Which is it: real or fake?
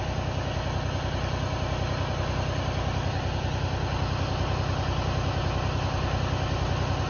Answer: real